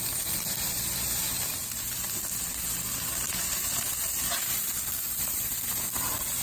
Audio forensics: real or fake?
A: real